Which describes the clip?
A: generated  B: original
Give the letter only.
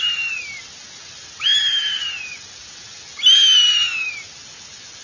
B